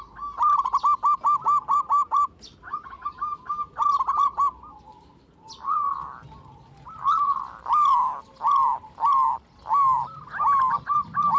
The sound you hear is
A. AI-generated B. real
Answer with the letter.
B